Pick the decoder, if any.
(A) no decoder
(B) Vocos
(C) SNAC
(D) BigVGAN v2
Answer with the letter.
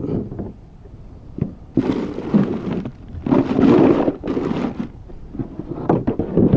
D